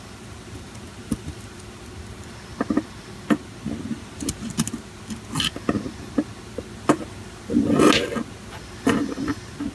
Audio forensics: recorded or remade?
recorded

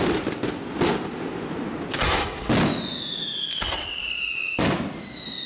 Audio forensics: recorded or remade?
recorded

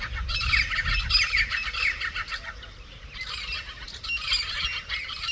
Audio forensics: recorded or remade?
recorded